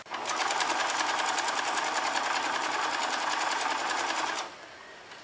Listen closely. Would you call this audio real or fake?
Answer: real